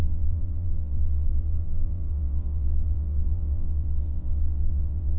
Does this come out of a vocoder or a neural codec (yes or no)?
yes